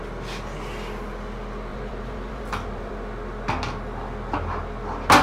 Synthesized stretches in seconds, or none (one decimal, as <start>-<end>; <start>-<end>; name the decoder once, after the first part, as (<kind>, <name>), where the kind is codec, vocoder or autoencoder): 1.7-2.9 (vocoder, BigVGAN v2)